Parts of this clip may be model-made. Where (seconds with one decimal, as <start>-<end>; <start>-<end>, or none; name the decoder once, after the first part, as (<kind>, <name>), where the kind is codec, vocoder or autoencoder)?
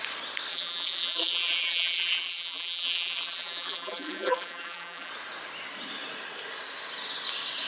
0.5-5.1 (vocoder, BigVGAN v2)